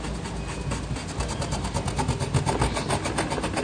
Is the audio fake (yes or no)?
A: no